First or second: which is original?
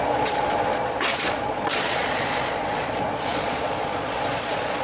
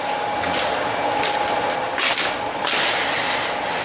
second